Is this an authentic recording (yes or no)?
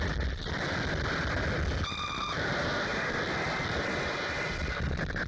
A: yes